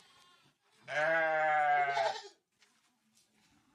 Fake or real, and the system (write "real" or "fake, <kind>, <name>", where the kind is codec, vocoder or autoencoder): real